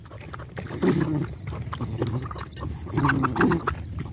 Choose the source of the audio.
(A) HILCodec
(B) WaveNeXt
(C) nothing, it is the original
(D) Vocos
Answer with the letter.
C